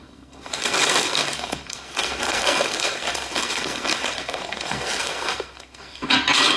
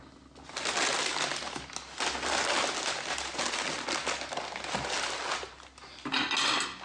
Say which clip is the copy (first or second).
first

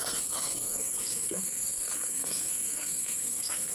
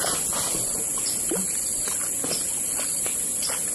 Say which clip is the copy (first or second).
first